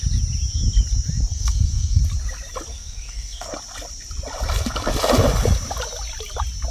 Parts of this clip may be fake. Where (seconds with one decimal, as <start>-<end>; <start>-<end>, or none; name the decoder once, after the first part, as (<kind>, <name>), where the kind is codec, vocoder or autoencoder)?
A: 1.3-2.0 (codec, SNAC); 2.7-3.5